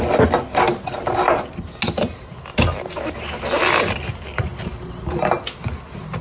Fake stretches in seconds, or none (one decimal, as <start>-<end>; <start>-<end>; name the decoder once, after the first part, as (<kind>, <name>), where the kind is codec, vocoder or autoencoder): none